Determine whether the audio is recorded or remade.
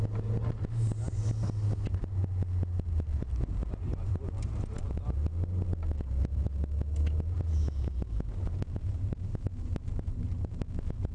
recorded